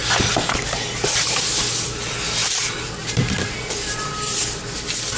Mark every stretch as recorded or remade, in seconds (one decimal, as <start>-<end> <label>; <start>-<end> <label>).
0.0-5.2 recorded